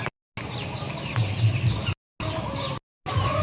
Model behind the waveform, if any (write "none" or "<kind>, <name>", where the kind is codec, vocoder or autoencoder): none